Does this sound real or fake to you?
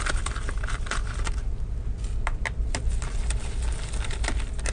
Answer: real